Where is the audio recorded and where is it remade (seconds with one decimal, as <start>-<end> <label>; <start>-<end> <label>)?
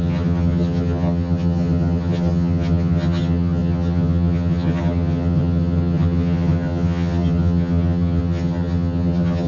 0.0-9.5 remade